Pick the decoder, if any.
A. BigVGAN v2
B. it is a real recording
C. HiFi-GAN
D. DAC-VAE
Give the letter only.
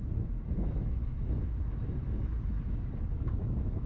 D